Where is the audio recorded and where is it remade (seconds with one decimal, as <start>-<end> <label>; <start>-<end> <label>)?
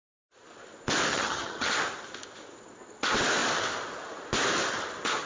0.0-1.1 recorded; 1.1-1.7 remade; 1.7-5.3 recorded